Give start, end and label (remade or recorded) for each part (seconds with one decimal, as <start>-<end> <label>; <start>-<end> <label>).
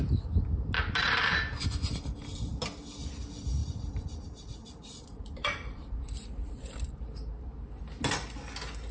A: 0.0-3.6 recorded; 3.6-7.8 remade; 7.8-8.9 recorded